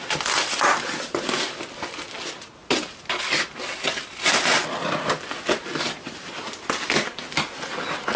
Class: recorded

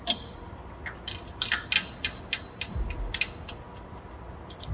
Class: recorded